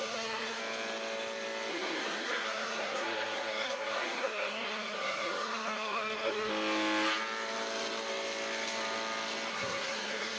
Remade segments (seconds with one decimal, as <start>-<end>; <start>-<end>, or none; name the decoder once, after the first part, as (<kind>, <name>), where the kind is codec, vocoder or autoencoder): 0.0-0.6 (codec, SNAC); 1.7-6.5; 9.5-10.4